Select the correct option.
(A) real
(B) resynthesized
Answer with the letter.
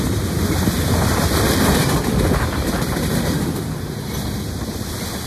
B